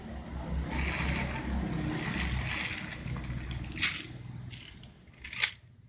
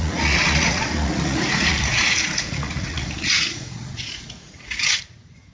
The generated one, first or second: second